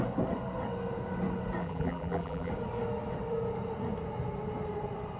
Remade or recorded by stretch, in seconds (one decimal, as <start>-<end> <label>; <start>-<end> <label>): 0.0-1.6 recorded; 1.6-2.5 remade; 2.5-5.2 recorded